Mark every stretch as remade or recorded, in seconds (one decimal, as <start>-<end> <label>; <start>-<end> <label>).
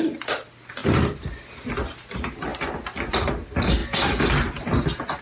0.0-5.2 recorded